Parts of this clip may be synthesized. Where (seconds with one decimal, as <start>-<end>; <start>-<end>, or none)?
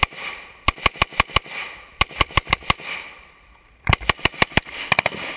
none